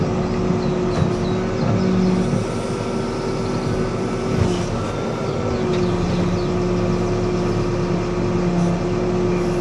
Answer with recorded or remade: recorded